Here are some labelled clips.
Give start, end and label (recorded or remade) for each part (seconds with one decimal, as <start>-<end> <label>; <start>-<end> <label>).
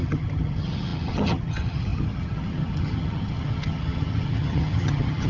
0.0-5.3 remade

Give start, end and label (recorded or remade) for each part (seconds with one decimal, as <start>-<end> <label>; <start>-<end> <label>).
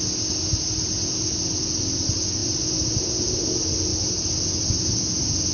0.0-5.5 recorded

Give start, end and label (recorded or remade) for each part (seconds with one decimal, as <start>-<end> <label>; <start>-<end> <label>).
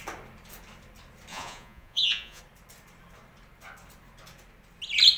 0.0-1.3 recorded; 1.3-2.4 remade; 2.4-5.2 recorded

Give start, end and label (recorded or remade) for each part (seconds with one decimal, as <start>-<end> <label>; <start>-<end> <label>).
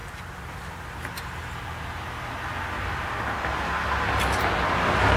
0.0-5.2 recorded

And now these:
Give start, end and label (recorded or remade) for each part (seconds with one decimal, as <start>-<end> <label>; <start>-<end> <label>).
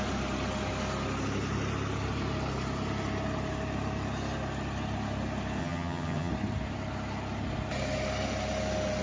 0.0-5.6 recorded; 5.6-6.3 remade; 6.3-9.0 recorded